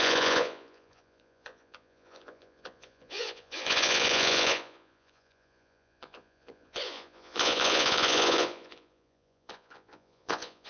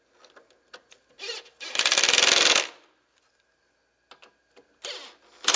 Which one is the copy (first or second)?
first